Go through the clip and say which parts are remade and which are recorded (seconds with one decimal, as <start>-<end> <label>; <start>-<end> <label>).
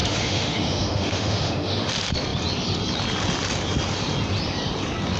0.0-1.9 remade; 1.9-5.2 recorded